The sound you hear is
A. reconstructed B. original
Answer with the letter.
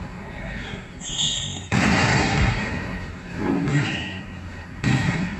A